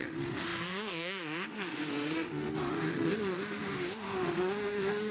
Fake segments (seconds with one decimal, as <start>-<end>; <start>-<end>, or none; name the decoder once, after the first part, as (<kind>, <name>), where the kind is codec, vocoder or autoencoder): 0.0-5.1 (autoencoder, DAC-VAE)